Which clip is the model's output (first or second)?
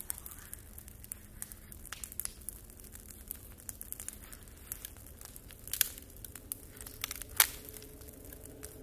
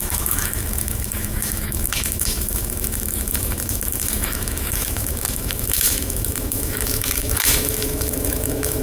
second